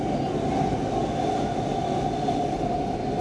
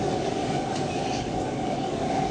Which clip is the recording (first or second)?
first